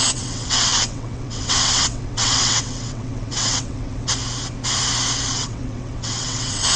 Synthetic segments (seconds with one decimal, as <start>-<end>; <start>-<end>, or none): 0.0-4.1; 5.3-6.8